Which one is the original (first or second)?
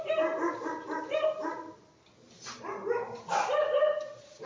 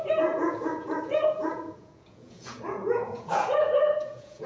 first